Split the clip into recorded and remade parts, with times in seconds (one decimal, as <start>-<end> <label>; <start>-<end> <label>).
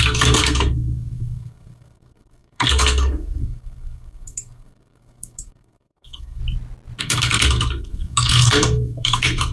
0.0-6.4 remade; 6.4-7.0 recorded; 7.0-9.5 remade